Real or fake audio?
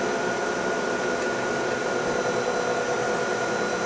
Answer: real